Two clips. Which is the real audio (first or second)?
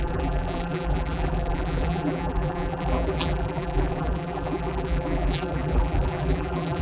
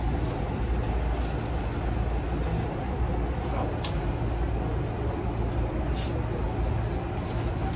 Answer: second